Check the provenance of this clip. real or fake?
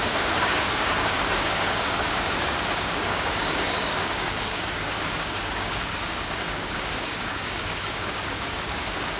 fake